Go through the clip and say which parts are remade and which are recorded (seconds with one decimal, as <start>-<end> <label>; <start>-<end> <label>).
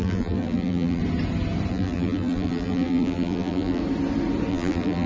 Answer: 0.0-1.0 remade; 1.0-1.7 recorded; 1.7-3.8 remade; 3.8-4.5 recorded; 4.5-5.1 remade